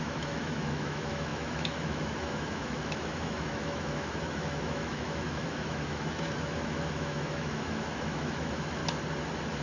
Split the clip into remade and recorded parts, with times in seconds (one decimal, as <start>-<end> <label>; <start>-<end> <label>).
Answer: 0.0-8.8 remade; 8.8-9.6 recorded